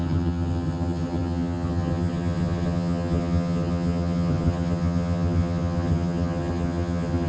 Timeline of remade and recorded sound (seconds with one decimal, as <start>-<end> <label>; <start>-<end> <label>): 0.0-7.3 remade